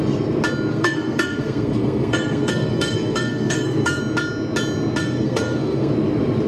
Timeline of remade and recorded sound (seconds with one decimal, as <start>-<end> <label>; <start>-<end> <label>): 0.0-0.7 recorded; 0.7-4.0 remade; 4.0-5.0 recorded; 5.0-5.9 remade; 5.9-6.5 recorded